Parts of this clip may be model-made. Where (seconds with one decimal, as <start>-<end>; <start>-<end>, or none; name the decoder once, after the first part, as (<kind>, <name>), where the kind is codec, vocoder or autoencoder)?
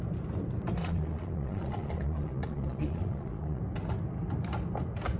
0.8-3.6 (vocoder, Vocos)